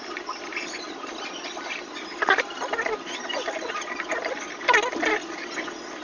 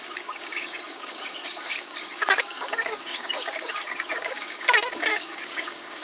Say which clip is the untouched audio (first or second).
first